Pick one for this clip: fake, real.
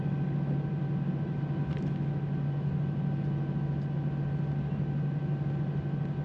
real